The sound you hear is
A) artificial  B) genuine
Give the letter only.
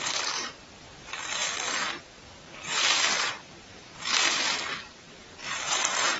A